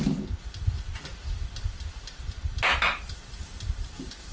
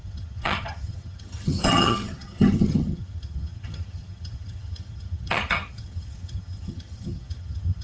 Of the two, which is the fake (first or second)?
second